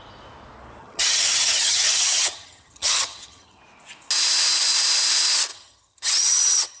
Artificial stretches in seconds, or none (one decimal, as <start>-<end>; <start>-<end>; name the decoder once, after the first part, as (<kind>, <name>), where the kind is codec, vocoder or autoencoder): 0.8-3.6 (vocoder, HiFi-GAN); 5.5-6.8